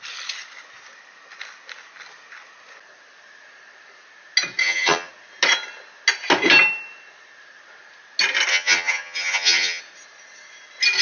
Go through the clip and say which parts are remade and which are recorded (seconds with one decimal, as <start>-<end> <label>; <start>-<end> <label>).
0.0-4.6 recorded; 4.6-5.1 remade; 5.1-8.5 recorded; 8.5-9.8 remade; 9.8-11.0 recorded